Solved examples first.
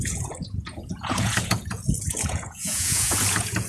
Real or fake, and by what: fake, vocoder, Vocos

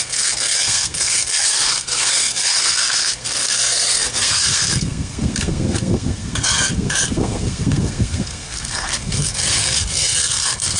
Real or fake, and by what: fake, codec, SNAC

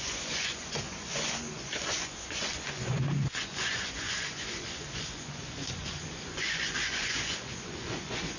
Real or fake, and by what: fake, vocoder, Vocos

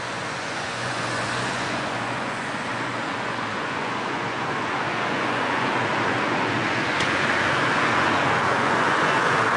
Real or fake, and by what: fake, vocoder, Vocos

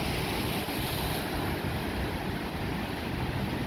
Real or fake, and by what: real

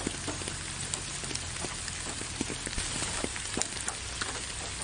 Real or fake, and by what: real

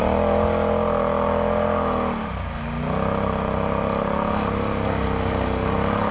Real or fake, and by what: real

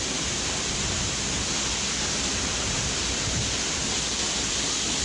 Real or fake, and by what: real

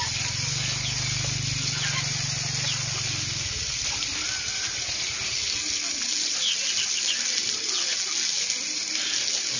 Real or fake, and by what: real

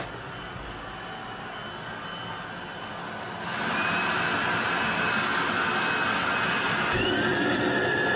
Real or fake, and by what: real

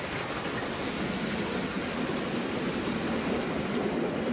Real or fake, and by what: real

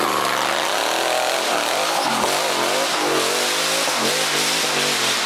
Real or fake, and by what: real